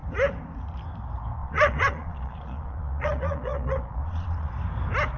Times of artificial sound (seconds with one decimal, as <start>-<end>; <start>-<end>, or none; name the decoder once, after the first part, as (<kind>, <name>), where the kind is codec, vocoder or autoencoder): 1.4-4.5 (vocoder, Vocos)